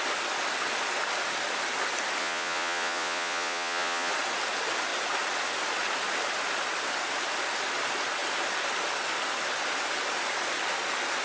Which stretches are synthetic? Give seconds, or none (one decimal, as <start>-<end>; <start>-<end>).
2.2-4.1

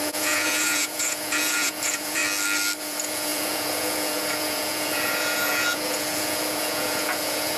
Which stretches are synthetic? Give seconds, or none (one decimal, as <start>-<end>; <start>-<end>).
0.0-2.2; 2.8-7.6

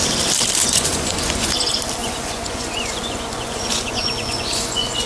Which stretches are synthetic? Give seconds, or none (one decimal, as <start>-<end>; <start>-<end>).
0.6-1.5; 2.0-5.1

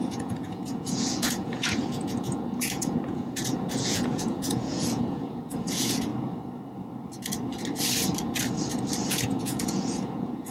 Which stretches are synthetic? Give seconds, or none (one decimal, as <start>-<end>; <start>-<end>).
0.0-6.1; 9.1-10.5